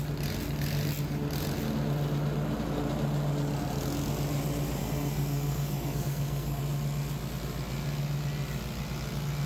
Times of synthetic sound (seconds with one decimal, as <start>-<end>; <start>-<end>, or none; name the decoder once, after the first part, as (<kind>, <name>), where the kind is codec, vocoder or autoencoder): 4.8-6.6 (codec, SNAC)